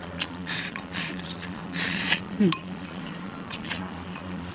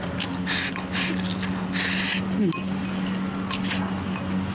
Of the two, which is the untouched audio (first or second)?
second